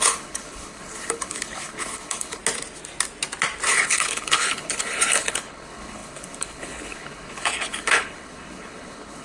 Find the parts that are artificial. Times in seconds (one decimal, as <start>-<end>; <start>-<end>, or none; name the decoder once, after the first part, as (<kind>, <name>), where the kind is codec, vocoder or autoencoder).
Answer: 0.0-2.4 (codec, HILCodec); 3.7-9.2